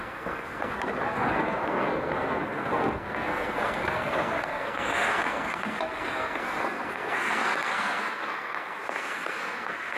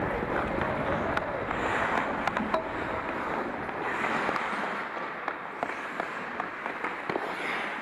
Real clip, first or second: second